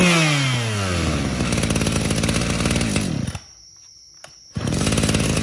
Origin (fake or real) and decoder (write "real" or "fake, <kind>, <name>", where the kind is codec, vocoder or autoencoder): real